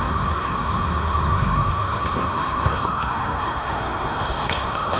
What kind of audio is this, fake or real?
fake